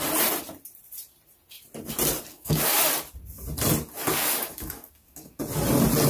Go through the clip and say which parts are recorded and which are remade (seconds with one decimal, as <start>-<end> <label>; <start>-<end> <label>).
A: 0.0-2.3 recorded; 2.3-2.8 remade; 2.8-4.1 recorded; 4.1-5.4 remade; 5.4-6.1 recorded